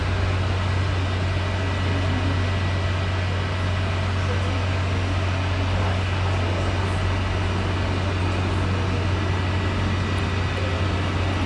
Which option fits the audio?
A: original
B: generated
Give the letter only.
A